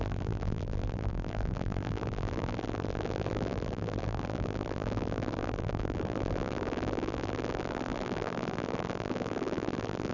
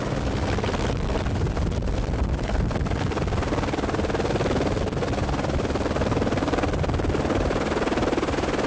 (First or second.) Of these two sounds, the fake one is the first